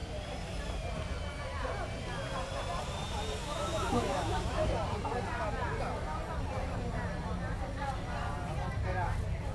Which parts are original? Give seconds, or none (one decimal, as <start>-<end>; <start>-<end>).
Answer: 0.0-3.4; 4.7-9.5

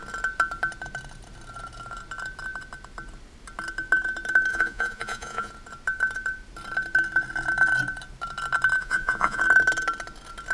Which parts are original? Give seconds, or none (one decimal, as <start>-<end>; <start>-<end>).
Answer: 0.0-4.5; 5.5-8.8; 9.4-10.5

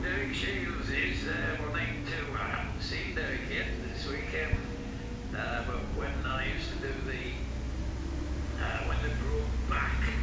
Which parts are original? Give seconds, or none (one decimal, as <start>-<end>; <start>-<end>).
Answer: 0.0-10.2

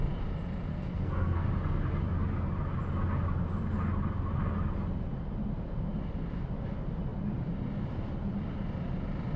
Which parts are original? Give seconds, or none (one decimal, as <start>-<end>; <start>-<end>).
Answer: 0.0-0.7; 1.5-9.4

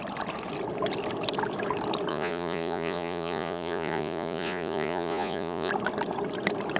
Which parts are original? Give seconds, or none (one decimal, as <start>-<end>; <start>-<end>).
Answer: 0.0-2.1; 5.7-6.8

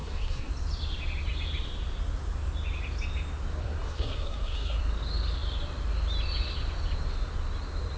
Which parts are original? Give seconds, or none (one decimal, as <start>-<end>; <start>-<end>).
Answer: 0.5-3.6; 4.8-8.0